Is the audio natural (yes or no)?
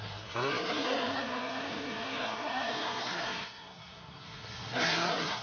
no